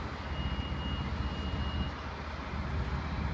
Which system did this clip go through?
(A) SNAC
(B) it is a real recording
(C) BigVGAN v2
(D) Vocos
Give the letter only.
B